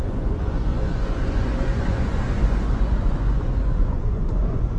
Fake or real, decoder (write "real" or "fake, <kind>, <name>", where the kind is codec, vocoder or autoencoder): fake, vocoder, Vocos